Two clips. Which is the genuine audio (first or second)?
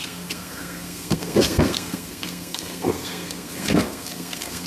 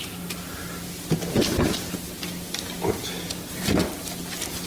second